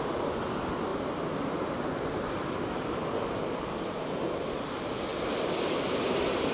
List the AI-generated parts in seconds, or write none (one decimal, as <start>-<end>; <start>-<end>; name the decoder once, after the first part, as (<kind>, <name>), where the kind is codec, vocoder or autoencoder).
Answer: 5.1-6.5 (vocoder, BigVGAN v2)